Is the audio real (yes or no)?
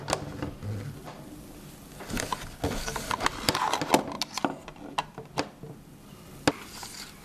yes